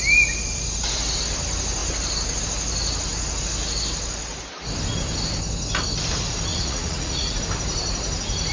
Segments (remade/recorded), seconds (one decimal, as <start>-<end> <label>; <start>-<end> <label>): 0.0-6.5 recorded; 6.5-7.4 remade; 7.4-8.5 recorded